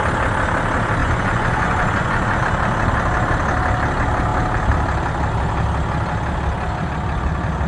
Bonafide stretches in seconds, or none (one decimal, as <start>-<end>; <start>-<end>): 0.0-1.0; 2.4-7.7